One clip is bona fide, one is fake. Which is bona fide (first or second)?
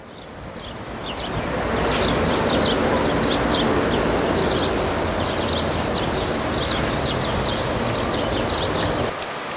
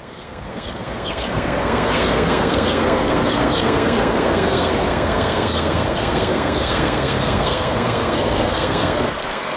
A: first